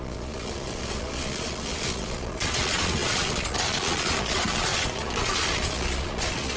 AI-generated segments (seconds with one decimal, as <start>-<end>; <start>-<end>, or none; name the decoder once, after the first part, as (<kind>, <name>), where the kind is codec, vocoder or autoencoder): 0.0-6.6 (vocoder, Vocos)